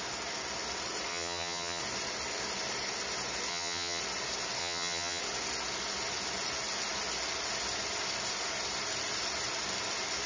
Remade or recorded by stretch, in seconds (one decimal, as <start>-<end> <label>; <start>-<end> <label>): 0.0-1.1 recorded; 1.1-1.8 remade; 1.8-3.5 recorded; 3.5-4.0 remade; 4.0-4.6 recorded; 4.6-5.2 remade; 5.2-10.3 recorded